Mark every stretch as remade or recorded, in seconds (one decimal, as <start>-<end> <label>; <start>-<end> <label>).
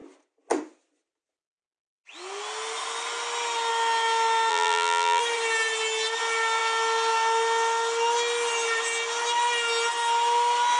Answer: 0.0-4.5 recorded; 4.5-5.2 remade; 5.2-10.8 recorded